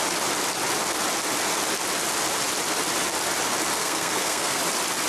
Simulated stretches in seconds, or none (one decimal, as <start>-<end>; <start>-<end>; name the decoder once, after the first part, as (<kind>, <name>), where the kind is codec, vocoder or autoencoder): 3.8-4.6 (codec, SNAC)